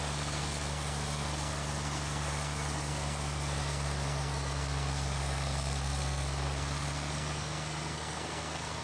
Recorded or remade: remade